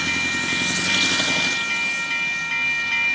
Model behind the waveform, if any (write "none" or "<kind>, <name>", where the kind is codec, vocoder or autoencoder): none